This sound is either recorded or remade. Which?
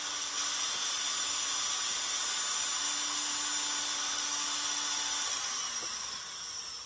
recorded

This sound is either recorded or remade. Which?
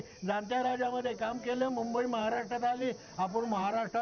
remade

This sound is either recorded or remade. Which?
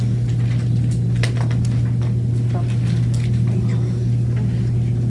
recorded